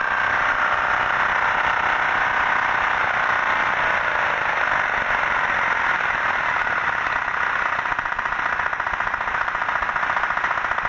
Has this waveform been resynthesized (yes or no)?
no